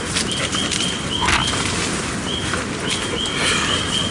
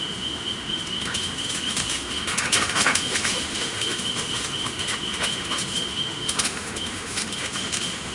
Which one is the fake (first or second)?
second